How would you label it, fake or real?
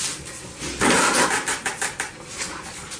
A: real